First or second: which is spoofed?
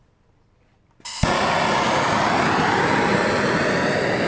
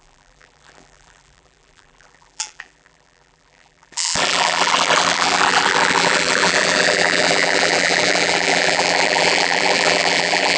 second